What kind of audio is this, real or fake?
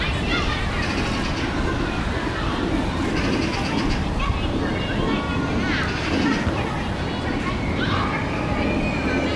real